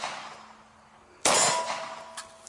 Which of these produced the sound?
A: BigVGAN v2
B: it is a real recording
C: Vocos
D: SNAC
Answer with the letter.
B